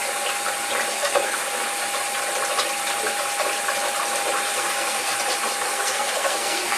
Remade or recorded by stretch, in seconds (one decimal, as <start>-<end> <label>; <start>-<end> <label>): 0.0-0.9 recorded; 0.9-1.4 remade; 1.4-4.5 recorded; 4.5-5.1 remade; 5.1-5.7 recorded; 5.7-6.8 remade